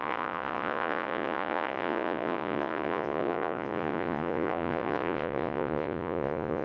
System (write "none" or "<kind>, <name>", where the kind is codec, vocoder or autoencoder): vocoder, Vocos